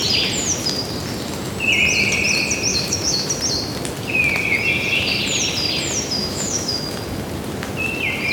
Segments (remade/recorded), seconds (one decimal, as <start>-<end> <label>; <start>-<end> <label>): 0.0-2.7 recorded; 2.7-3.3 remade; 3.3-6.2 recorded; 6.2-7.0 remade; 7.0-8.3 recorded